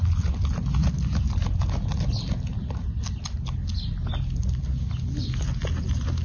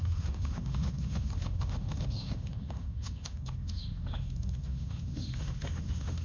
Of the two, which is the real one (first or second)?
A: first